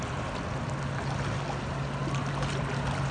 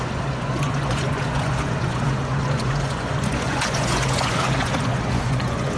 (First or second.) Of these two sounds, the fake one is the second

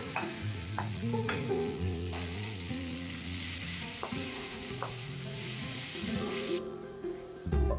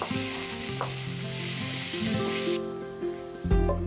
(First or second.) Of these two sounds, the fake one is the first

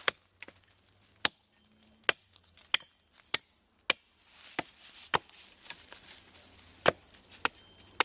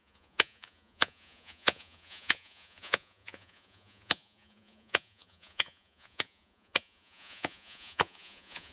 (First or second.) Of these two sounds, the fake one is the second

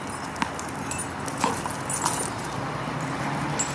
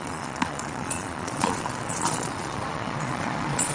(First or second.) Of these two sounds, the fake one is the second